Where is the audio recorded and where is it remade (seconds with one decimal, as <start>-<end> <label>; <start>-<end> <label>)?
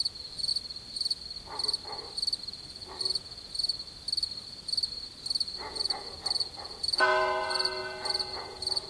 0.0-0.5 remade; 0.5-5.5 recorded; 5.5-8.9 remade